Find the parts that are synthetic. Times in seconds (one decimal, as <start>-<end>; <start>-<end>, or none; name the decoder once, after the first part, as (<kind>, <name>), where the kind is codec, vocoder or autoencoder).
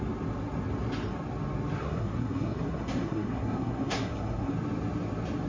1.8-4.5 (codec, SNAC)